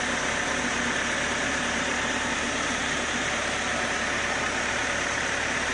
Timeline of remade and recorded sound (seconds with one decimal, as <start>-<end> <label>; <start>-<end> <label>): 0.0-5.7 recorded